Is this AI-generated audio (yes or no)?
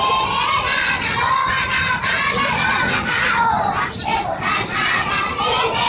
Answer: no